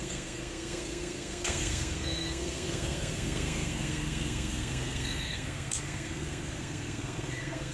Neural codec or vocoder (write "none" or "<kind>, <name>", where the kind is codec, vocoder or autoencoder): codec, SNAC